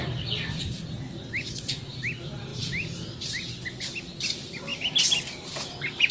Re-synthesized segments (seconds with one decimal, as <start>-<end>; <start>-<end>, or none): none